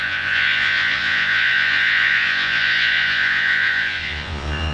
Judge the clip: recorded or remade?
remade